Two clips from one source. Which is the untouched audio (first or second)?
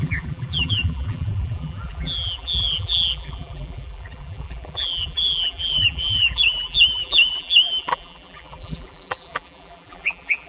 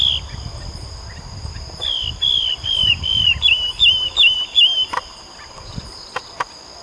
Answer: second